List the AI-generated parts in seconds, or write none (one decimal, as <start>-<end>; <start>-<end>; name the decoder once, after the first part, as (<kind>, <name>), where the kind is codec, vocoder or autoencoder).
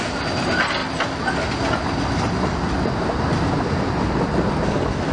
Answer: none